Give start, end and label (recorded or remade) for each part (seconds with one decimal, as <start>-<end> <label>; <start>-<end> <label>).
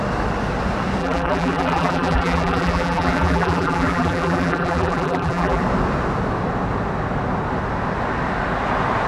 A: 0.0-1.0 recorded; 1.0-5.6 remade; 5.6-9.1 recorded